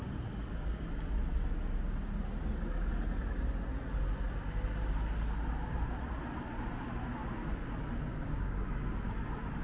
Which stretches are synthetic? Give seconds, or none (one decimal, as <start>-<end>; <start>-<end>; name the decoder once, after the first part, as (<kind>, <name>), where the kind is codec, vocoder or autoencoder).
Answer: 8.1-8.8 (codec, DAC)